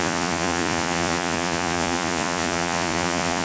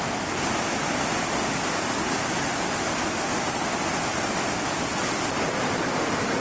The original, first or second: second